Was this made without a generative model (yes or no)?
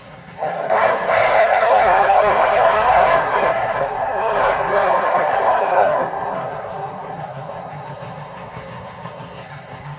no